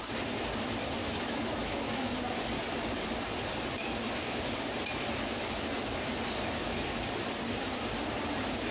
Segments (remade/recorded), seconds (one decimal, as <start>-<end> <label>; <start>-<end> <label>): 0.0-1.0 recorded; 1.0-2.1 remade; 2.1-8.7 recorded